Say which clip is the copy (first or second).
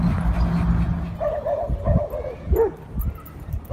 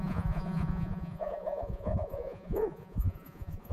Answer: second